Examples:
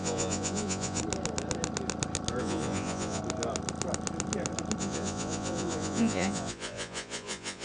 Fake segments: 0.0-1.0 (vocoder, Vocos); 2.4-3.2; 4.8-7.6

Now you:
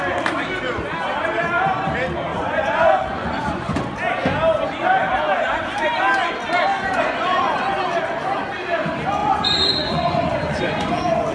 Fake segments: 2.3-3.8 (vocoder, Vocos); 6.7-7.8; 9.2-10.9